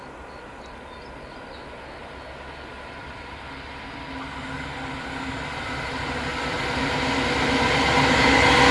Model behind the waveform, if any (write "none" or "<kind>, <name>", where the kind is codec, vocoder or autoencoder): none